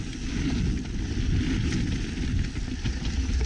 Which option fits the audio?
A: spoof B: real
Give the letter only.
B